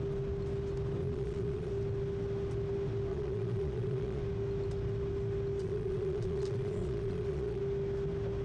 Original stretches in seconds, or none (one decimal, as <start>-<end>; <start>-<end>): 0.0-1.0; 1.7-3.1; 4.2-5.6; 7.6-8.4